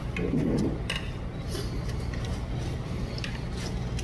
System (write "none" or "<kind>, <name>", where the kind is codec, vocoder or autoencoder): none